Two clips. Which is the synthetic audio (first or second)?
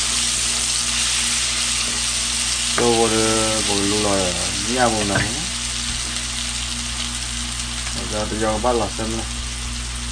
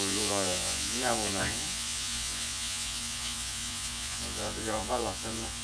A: second